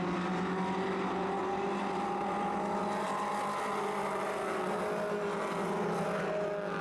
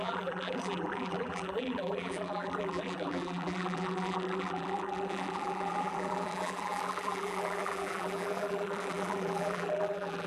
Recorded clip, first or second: first